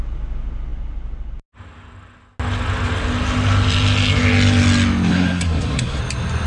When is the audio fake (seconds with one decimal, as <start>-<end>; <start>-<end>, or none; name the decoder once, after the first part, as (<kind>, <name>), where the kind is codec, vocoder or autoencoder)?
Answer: 5.1-6.0 (codec, SNAC)